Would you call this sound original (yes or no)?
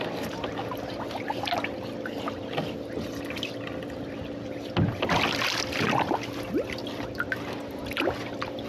yes